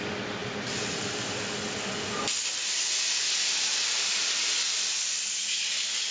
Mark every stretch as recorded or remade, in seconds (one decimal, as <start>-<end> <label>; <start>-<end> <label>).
0.0-0.4 recorded; 0.4-1.3 remade; 1.3-3.7 recorded; 3.7-4.3 remade; 4.3-6.1 recorded